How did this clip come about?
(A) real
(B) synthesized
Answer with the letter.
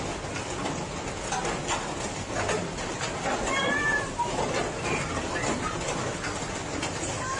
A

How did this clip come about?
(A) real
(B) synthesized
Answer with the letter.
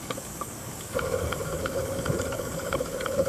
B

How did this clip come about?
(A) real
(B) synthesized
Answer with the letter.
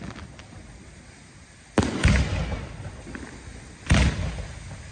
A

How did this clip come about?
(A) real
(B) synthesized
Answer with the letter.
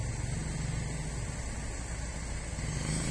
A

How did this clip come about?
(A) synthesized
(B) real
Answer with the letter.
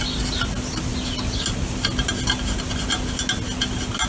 B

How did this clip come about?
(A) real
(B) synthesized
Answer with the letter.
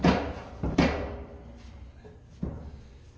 A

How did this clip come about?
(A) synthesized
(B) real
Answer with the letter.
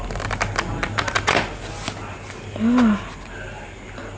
B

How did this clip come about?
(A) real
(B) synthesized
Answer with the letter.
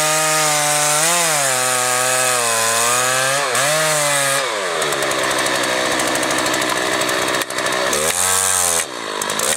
A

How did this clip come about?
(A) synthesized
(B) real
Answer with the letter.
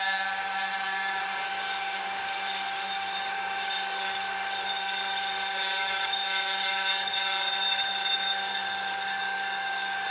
A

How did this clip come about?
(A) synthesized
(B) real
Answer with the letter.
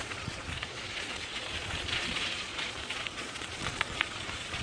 A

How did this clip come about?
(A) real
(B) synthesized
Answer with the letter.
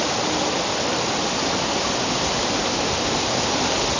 A